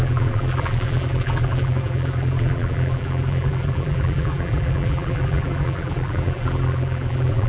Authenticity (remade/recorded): remade